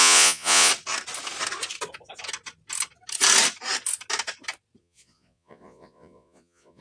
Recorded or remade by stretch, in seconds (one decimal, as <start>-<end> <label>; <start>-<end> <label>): 0.0-0.7 remade; 0.7-4.8 recorded; 4.8-6.8 remade